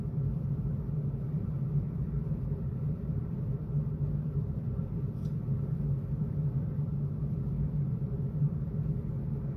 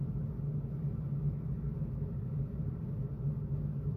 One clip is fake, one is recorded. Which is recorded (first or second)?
second